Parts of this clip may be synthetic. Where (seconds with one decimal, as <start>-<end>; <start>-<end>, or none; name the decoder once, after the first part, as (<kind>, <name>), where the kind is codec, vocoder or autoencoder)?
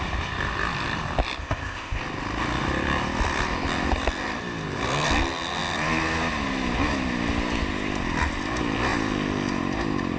1.4-2.0 (codec, ZipCodec)